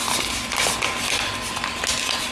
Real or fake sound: real